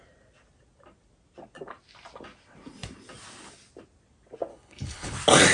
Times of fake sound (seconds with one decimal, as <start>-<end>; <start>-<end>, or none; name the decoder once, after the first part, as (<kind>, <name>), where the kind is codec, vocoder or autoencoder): 4.5-5.1 (codec, HILCodec)